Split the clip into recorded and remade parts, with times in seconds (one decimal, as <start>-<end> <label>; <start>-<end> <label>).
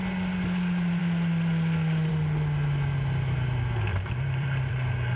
0.0-3.9 recorded; 3.9-4.7 remade; 4.7-5.2 recorded